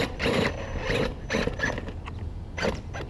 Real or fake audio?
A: fake